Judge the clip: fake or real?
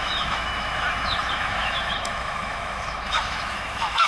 fake